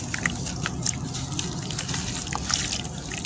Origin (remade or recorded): recorded